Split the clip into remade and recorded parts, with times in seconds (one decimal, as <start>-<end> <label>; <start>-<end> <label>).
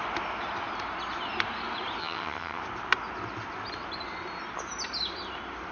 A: 0.0-2.0 recorded; 2.0-2.6 remade; 2.6-5.7 recorded